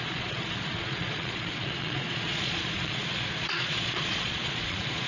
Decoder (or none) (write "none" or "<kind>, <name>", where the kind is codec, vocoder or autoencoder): vocoder, Vocos